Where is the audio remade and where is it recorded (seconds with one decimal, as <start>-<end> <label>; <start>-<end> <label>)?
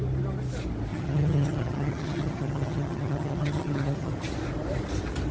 0.0-0.9 recorded; 0.9-4.1 remade; 4.1-5.3 recorded